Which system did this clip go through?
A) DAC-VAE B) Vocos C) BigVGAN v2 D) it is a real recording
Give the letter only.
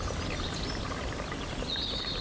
D